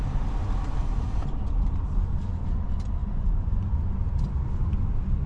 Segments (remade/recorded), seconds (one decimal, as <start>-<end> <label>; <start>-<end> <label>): 0.0-3.0 recorded; 3.0-3.9 remade; 3.9-5.3 recorded

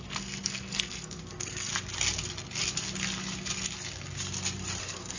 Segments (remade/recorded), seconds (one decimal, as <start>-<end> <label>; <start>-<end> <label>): 0.0-1.7 remade; 1.7-4.8 recorded; 4.8-5.2 remade